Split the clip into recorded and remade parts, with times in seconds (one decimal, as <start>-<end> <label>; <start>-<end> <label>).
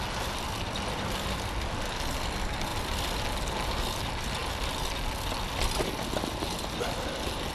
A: 0.0-7.5 recorded